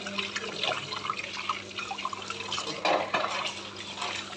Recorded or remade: recorded